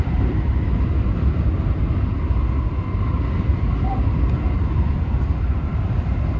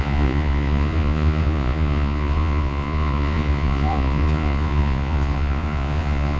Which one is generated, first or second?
second